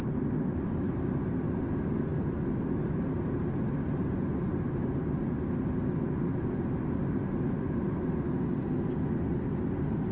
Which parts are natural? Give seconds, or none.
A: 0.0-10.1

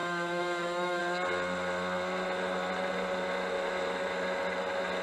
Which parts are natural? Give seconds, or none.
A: 1.0-5.0

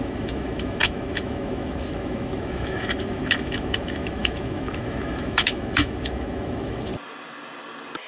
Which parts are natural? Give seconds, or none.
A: 6.9-8.1